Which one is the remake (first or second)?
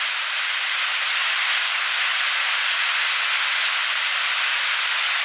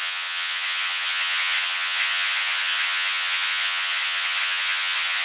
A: second